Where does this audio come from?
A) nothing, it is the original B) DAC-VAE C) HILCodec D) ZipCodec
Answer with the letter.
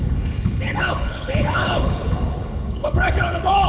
C